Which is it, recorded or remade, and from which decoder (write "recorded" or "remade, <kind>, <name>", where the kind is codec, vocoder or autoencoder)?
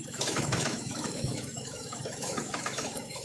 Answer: remade, autoencoder, DAC-VAE